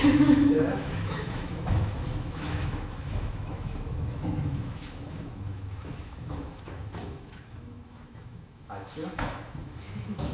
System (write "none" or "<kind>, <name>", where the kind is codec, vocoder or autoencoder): autoencoder, DAC-VAE